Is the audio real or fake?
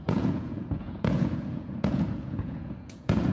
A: fake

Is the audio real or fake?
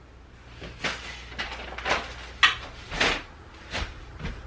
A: real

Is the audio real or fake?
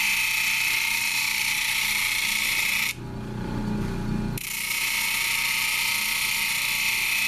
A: real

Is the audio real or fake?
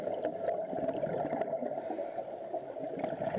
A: real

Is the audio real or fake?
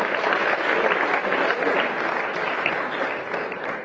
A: real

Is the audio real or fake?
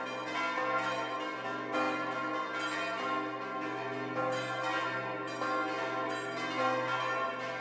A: real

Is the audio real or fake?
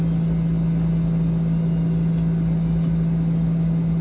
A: real